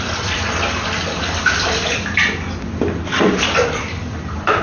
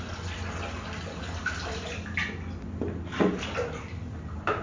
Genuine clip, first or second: second